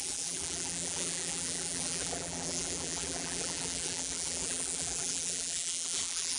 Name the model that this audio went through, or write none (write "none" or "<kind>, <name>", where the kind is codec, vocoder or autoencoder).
vocoder, BigVGAN v2